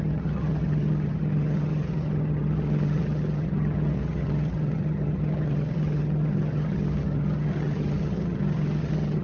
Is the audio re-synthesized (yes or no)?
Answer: yes